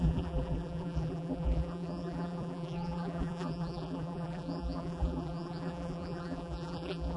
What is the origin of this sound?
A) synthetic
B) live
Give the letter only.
A